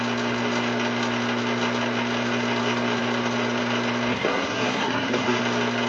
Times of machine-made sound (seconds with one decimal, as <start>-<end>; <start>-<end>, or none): 4.1-5.4